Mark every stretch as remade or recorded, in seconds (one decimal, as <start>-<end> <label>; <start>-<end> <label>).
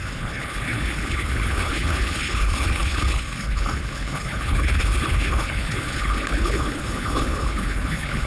0.0-8.3 remade